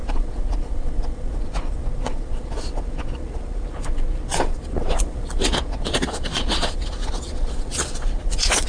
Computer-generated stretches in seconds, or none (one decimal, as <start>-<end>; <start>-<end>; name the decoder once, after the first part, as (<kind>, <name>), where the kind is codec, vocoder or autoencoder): 0.0-8.7 (vocoder, Vocos)